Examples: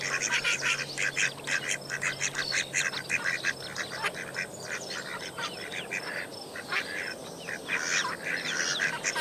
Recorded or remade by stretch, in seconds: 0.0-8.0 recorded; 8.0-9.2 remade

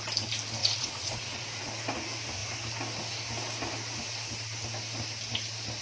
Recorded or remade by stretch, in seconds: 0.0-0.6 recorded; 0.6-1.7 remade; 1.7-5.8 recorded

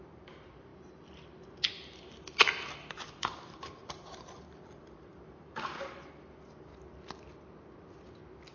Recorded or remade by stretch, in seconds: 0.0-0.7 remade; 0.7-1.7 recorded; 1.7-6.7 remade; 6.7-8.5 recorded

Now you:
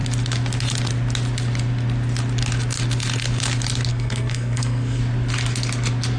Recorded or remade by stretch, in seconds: 0.0-3.9 recorded; 3.9-5.0 remade; 5.0-6.2 recorded

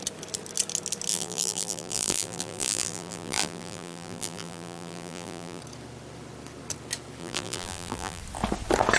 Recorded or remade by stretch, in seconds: 0.0-1.1 recorded; 1.1-5.6 remade; 5.6-7.2 recorded; 7.2-8.2 remade; 8.2-9.0 recorded

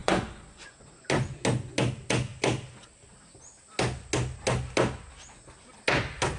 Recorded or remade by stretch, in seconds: 0.0-0.9 remade; 0.9-6.4 recorded

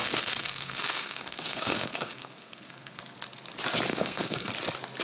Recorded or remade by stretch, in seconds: 0.0-3.0 remade; 3.0-3.9 recorded; 3.9-4.5 remade; 4.5-5.0 recorded